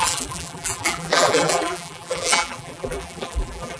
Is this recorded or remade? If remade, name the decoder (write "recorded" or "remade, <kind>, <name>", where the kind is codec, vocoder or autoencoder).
remade, vocoder, BigVGAN v2